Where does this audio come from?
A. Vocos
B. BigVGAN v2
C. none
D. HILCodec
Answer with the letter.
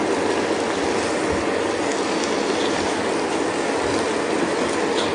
C